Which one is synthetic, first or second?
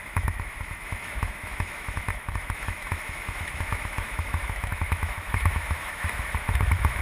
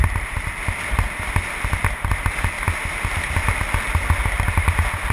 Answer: first